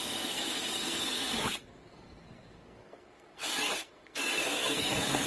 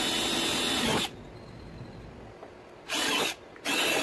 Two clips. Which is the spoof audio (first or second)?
first